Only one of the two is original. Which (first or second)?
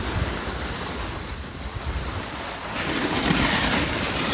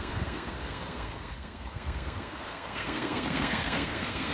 first